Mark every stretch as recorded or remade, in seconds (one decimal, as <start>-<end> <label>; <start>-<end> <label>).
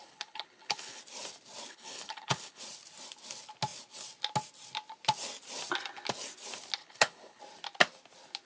0.0-1.0 remade; 1.0-1.7 recorded; 1.7-2.6 remade; 2.6-6.8 recorded; 6.8-7.4 remade; 7.4-8.4 recorded